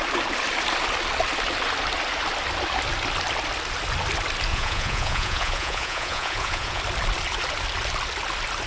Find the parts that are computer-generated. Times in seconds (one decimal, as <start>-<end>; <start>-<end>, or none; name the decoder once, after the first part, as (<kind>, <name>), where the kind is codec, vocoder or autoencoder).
4.5-6.8 (vocoder, Vocos)